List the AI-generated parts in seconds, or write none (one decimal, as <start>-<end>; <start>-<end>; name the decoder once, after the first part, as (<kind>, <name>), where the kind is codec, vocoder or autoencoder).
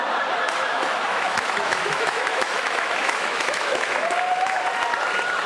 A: 0.7-4.0 (autoencoder, DAC-VAE)